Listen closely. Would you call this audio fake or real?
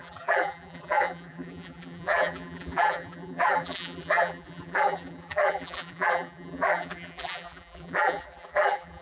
fake